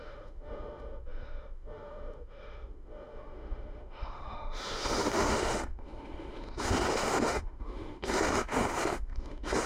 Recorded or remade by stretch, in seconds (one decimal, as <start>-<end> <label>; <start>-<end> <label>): 0.0-9.7 remade